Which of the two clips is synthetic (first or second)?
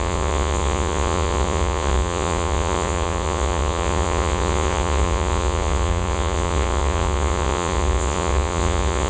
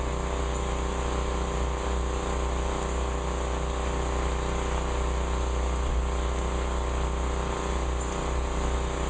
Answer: first